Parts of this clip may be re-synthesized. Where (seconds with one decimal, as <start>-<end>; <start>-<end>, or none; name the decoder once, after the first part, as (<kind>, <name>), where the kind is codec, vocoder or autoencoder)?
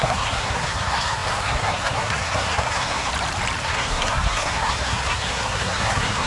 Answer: 0.0-3.1 (codec, SNAC); 3.6-6.3